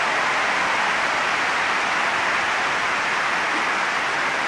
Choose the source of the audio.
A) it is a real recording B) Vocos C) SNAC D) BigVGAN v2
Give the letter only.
A